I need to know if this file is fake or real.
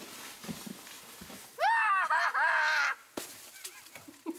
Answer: real